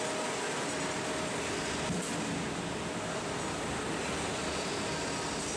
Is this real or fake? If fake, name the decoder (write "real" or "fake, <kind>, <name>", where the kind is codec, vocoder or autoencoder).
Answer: real